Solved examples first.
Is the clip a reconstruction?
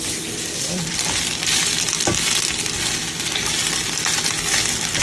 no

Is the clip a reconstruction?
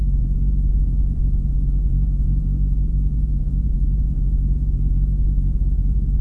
yes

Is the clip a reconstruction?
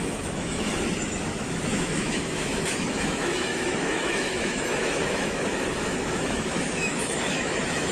yes